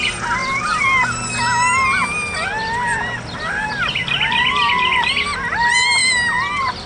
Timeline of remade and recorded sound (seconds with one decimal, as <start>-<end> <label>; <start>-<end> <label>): 0.0-6.9 recorded